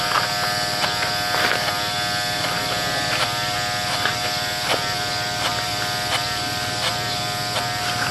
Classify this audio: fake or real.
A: real